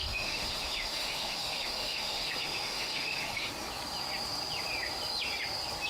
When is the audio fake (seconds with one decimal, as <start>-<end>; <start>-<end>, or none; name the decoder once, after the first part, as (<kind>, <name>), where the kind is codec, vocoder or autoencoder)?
0.0-3.5 (autoencoder, DAC-VAE)